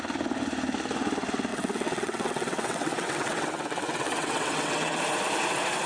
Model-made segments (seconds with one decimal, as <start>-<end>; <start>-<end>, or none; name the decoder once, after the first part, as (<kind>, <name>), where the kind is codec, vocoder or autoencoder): 1.5-5.0 (vocoder, WaveNeXt)